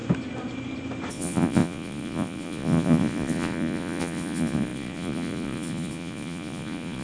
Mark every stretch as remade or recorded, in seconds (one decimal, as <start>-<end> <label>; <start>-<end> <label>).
0.0-1.1 recorded; 1.1-7.0 remade